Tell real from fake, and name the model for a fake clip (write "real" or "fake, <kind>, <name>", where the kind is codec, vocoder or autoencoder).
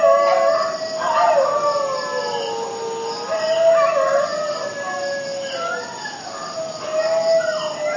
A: real